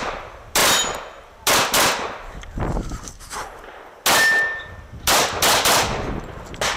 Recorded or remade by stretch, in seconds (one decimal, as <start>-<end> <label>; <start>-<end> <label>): 0.0-6.8 recorded